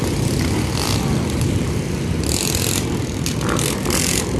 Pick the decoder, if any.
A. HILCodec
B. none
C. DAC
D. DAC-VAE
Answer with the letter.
B